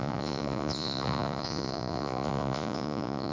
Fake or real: fake